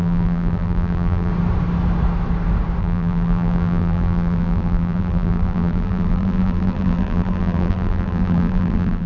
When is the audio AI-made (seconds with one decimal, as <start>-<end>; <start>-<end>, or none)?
0.0-1.3; 2.8-9.1